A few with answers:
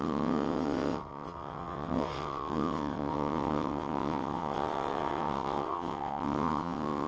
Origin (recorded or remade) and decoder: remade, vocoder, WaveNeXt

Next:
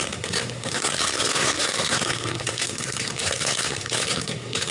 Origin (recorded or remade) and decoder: remade, codec, SNAC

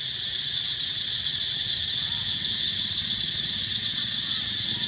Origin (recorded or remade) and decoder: remade, vocoder, WaveNeXt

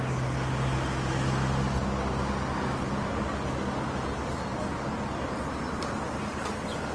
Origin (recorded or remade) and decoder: recorded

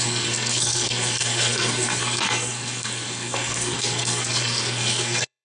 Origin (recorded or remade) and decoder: remade, codec, SNAC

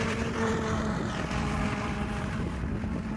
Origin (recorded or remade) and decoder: remade, vocoder, BigVGAN v2